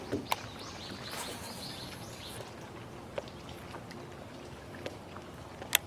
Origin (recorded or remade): recorded